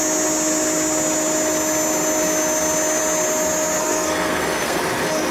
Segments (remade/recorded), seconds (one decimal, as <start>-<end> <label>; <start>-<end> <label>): 0.0-3.8 recorded; 3.8-4.8 remade; 4.8-5.3 recorded